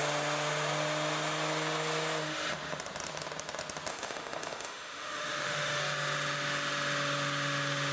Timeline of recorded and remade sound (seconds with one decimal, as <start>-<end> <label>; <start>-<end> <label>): 0.0-3.9 recorded; 3.9-5.8 remade; 5.8-7.9 recorded